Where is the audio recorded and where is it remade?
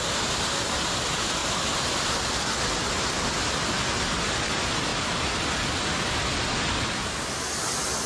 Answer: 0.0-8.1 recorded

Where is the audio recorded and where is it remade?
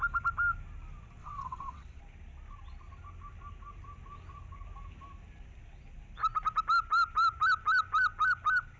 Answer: 0.0-1.2 recorded; 1.2-2.0 remade; 2.0-8.8 recorded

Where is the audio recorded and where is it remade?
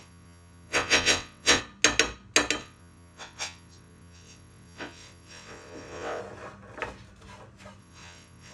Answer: 0.0-1.6 remade; 1.6-2.6 recorded; 2.6-6.2 remade; 6.2-7.8 recorded; 7.8-8.5 remade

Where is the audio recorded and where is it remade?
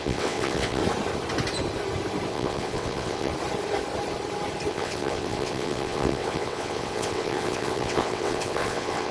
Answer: 0.0-0.8 remade; 0.8-2.3 recorded; 2.3-3.3 remade; 3.3-4.7 recorded; 4.7-9.1 remade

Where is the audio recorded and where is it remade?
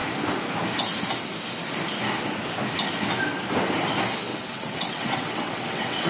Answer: 0.0-4.3 recorded; 4.3-6.1 remade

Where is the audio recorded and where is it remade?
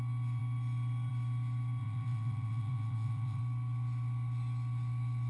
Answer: 0.0-1.8 recorded; 1.8-3.4 remade; 3.4-5.3 recorded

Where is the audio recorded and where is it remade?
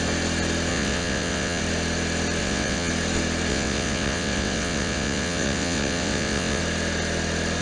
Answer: 0.0-0.7 recorded; 0.7-1.6 remade; 1.6-2.4 recorded; 2.4-2.9 remade; 2.9-3.5 recorded; 3.5-6.6 remade; 6.6-7.6 recorded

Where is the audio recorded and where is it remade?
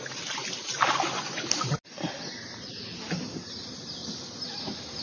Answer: 0.0-5.0 recorded